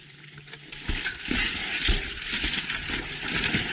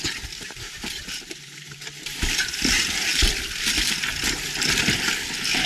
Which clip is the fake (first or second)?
second